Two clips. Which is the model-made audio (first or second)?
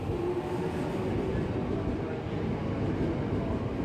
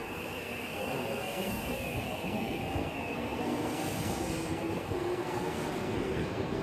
second